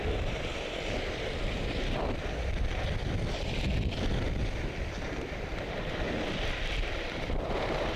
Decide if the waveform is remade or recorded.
remade